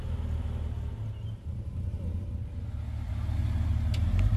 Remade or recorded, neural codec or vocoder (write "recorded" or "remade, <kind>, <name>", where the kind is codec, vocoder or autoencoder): recorded